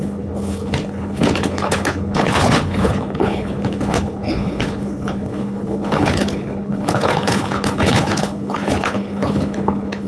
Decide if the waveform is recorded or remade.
remade